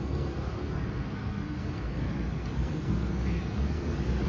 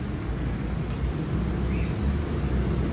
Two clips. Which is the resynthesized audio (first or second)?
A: first